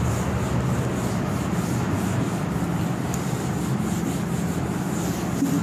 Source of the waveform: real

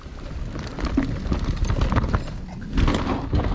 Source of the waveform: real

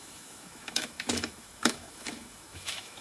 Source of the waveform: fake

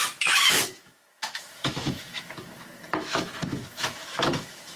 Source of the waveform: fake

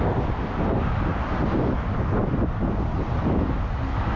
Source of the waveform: real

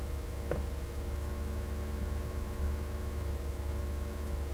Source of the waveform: fake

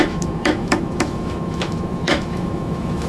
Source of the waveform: fake